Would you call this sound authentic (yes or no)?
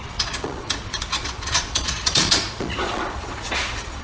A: no